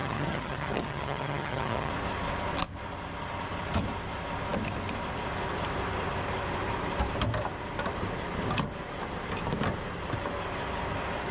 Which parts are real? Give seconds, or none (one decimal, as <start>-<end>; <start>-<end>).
1.9-11.3